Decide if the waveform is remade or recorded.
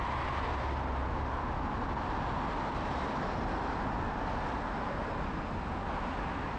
recorded